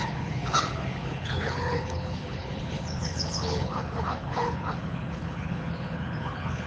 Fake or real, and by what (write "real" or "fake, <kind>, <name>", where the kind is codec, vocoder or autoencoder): fake, codec, HILCodec